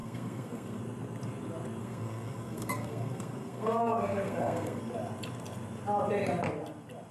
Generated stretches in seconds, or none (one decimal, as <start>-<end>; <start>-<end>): 0.0-0.8; 1.8-4.8